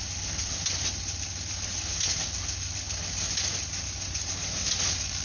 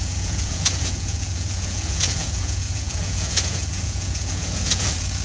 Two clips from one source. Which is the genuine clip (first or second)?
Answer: first